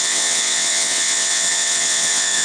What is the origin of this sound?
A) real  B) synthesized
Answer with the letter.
B